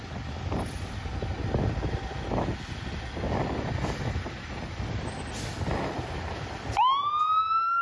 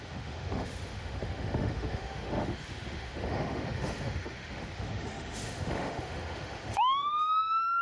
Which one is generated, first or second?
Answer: second